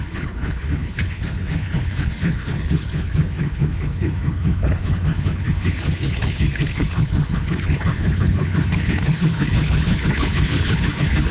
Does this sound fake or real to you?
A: fake